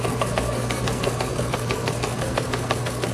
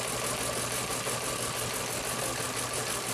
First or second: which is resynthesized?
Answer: first